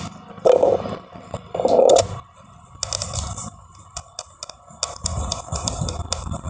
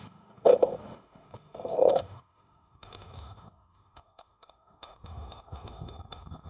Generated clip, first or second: second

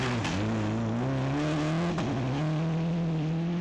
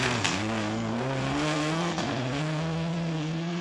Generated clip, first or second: second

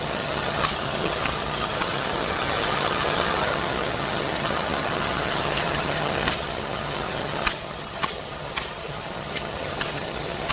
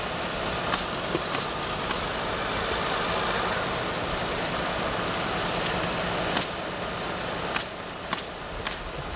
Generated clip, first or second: first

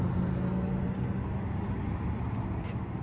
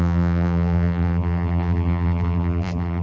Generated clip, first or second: second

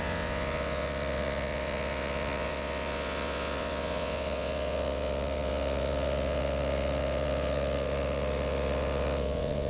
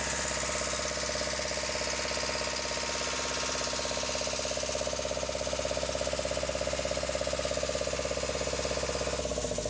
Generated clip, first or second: first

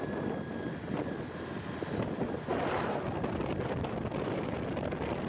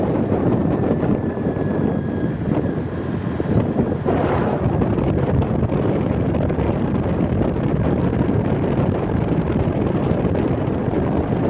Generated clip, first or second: second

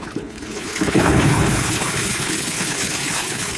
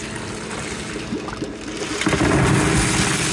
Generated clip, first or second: first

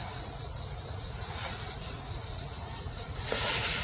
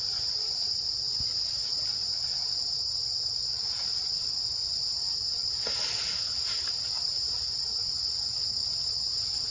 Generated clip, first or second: first